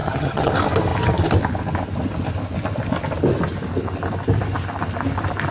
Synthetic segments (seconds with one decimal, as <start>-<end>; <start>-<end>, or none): 0.0-0.5